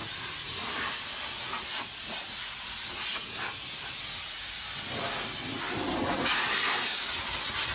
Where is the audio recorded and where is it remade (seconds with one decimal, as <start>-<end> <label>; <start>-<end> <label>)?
0.0-7.7 recorded